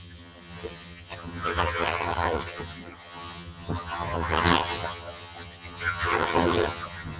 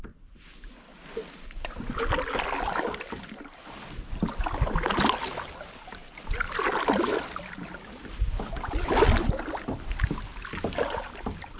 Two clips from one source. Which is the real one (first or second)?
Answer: second